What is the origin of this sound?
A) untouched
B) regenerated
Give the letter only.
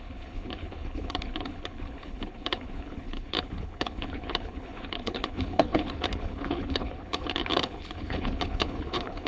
B